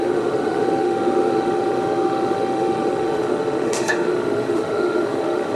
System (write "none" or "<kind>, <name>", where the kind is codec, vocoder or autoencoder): autoencoder, DAC-VAE